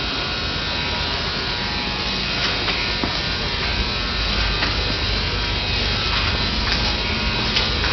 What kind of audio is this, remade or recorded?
recorded